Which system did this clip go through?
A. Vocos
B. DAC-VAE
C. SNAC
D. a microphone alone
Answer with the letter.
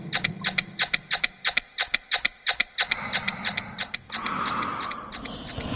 D